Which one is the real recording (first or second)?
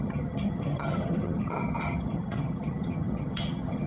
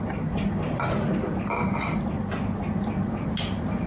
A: second